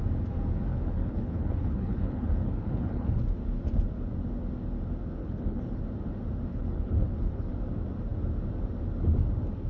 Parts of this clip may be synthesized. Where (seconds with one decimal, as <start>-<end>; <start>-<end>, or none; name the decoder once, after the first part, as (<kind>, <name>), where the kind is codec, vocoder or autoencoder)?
0.7-3.2 (codec, HILCodec); 5.2-5.8; 6.5-7.5